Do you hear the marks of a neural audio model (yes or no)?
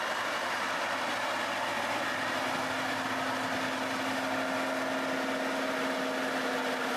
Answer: no